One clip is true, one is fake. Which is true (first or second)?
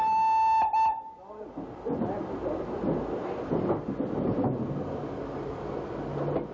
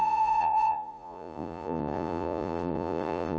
first